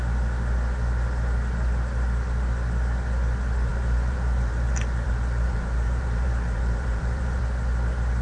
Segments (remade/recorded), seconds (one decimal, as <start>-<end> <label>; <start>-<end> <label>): 0.0-3.7 recorded; 3.7-7.4 remade; 7.4-8.2 recorded